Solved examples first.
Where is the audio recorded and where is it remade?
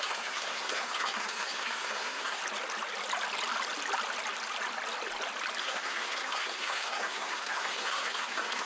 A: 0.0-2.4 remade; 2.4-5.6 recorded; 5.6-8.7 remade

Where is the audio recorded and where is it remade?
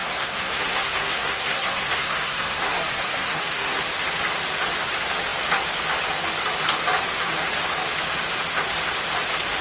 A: 0.0-3.8 remade; 3.8-9.6 recorded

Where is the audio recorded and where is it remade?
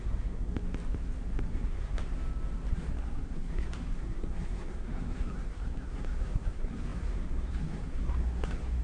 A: 0.0-0.5 remade; 0.5-1.5 recorded; 1.5-2.0 remade; 2.0-2.7 recorded; 2.7-8.8 remade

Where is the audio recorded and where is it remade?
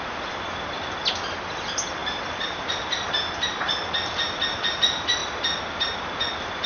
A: 0.0-6.7 recorded